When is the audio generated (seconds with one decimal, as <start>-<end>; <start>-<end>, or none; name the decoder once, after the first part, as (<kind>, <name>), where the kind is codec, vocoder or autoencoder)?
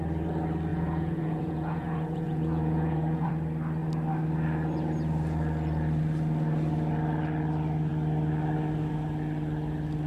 0.7-3.3 (vocoder, Vocos)